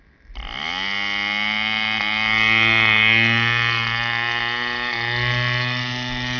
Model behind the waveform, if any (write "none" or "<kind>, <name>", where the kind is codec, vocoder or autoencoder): none